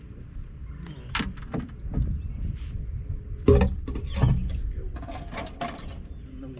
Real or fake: real